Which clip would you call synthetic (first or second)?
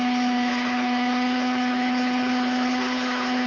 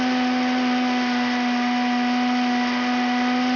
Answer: first